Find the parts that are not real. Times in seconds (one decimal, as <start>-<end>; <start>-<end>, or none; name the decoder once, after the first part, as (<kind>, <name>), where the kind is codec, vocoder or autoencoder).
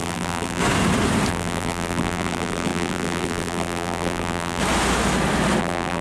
0.0-0.6 (vocoder, BigVGAN v2); 1.3-4.6; 5.6-6.0